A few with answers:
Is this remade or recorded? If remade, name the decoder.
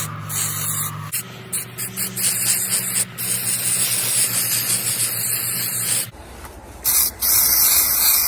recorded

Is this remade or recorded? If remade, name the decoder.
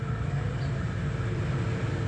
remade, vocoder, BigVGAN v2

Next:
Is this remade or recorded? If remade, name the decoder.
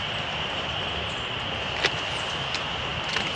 recorded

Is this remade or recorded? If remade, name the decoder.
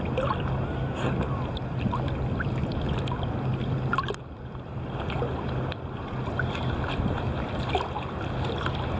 recorded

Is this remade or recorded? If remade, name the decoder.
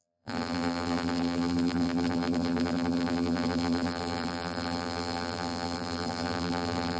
remade, vocoder, BigVGAN v2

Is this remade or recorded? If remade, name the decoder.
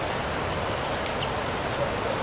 recorded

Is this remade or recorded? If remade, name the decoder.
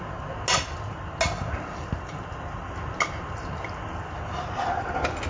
recorded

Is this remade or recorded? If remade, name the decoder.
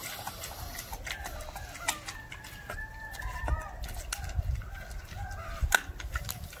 recorded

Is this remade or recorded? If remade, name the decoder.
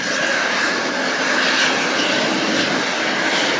recorded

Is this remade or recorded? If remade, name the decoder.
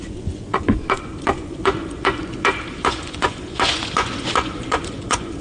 remade, vocoder, Vocos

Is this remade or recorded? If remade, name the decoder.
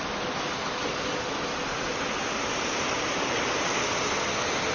recorded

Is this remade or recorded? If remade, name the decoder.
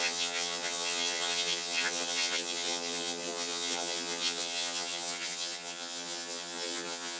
remade, vocoder, HiFi-GAN